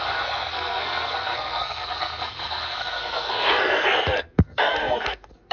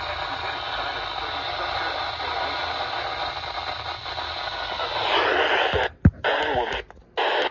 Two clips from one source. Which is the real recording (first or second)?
second